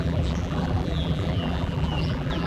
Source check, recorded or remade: remade